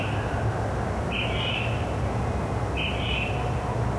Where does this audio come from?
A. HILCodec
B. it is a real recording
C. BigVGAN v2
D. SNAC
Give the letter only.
B